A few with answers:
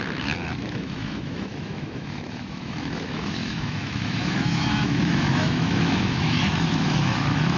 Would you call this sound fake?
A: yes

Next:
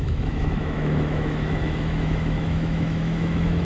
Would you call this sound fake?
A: yes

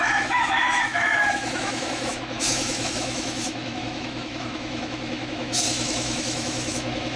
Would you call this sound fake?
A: yes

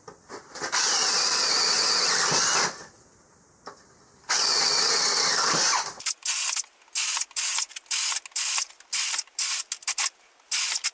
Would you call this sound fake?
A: no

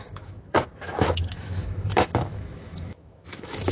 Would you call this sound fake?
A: yes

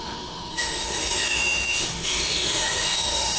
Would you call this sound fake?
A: yes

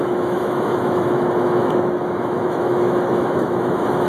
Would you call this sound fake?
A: yes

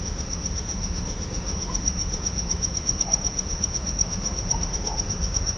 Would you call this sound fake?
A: yes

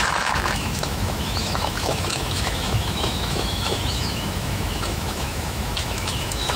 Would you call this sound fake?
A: yes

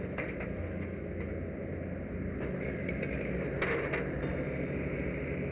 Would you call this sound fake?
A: no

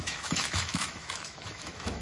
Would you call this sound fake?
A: yes